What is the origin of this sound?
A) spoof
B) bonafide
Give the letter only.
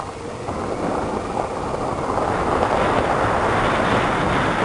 B